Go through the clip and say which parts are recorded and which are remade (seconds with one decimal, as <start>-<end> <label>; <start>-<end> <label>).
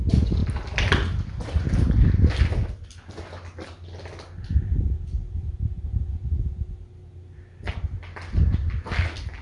0.0-5.4 recorded; 5.4-6.4 remade; 6.4-9.4 recorded